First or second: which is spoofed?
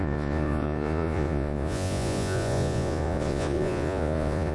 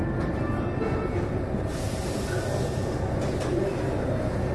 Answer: first